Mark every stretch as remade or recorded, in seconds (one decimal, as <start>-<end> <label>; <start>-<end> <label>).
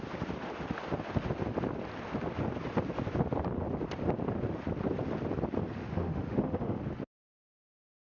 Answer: 0.0-5.8 recorded; 5.8-6.8 remade; 6.8-8.2 recorded